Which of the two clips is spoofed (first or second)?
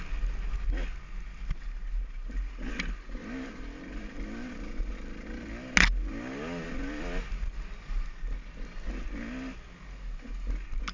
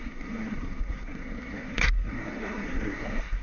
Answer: second